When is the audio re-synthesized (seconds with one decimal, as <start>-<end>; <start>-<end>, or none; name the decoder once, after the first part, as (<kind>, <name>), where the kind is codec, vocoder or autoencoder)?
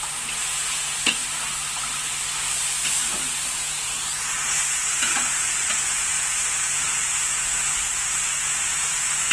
0.0-1.2 (vocoder, Vocos); 3.5-9.3